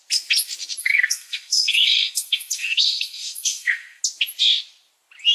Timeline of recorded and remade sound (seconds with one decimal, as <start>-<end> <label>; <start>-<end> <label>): 0.0-0.8 recorded; 0.8-4.0 remade; 4.0-5.3 recorded

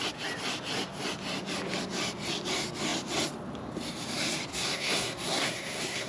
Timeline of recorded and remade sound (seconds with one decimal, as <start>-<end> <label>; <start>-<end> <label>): 0.0-4.5 recorded; 4.5-6.1 remade

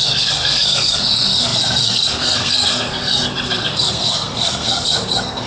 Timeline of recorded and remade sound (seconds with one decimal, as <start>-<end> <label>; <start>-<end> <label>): 0.0-5.5 remade

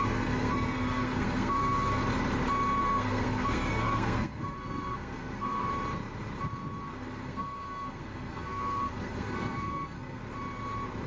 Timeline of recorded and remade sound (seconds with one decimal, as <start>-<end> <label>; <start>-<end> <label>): 0.0-2.0 remade; 2.0-2.8 recorded; 2.8-5.7 remade; 5.7-6.8 recorded; 6.8-10.2 remade; 10.2-11.1 recorded

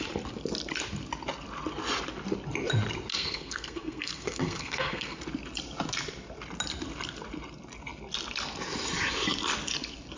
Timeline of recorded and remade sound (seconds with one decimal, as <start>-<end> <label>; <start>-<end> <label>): 0.0-3.1 recorded; 3.1-5.2 remade; 5.2-10.2 recorded

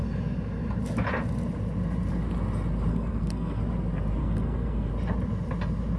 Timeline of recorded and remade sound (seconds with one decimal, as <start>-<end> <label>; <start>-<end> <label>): 0.0-2.9 recorded; 2.9-3.6 remade; 3.6-4.2 recorded; 4.2-4.9 remade; 4.9-6.0 recorded